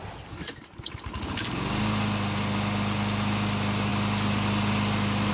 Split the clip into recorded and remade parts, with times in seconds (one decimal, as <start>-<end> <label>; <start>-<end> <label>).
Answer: 0.0-5.3 recorded